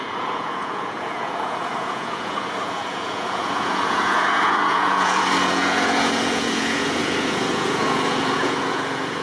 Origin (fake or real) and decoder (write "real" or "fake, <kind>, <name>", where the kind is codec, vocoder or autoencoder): fake, vocoder, Vocos